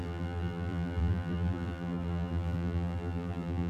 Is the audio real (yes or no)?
no